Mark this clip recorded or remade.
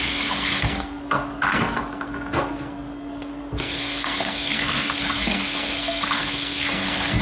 remade